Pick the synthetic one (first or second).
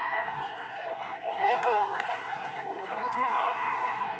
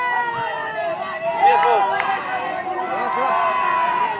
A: first